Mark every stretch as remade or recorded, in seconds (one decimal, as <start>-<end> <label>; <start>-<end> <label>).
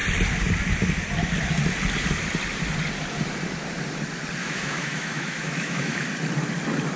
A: 0.0-4.4 recorded; 4.4-6.1 remade; 6.1-7.0 recorded